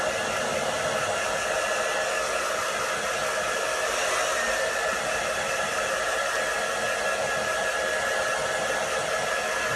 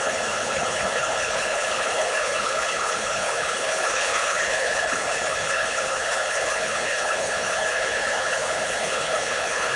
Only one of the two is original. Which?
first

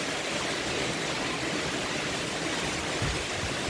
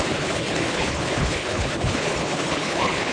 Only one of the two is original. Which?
first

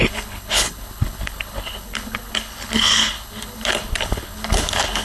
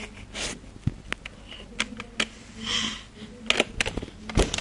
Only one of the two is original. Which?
second